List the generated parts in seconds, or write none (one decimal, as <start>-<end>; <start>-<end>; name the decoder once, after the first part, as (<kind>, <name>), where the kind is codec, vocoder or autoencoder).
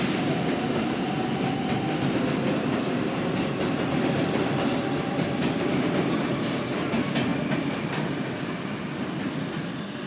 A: none